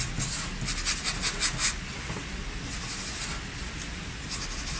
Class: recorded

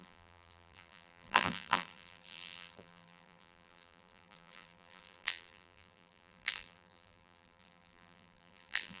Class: remade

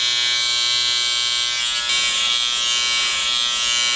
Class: recorded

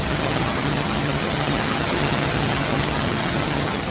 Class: remade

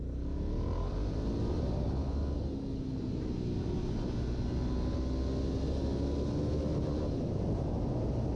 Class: recorded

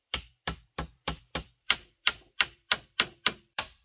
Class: remade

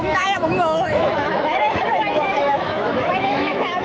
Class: remade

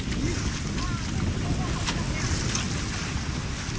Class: recorded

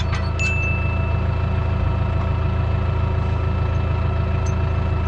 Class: recorded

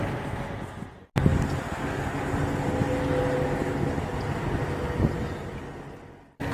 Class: recorded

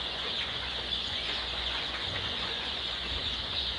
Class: remade